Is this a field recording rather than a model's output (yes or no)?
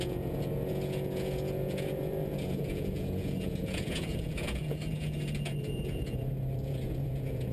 no